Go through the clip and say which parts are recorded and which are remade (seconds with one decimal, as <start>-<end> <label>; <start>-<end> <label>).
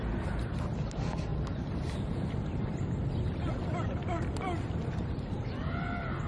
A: 0.0-6.3 recorded